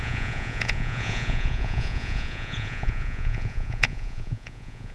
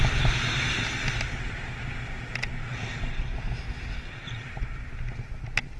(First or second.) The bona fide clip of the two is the second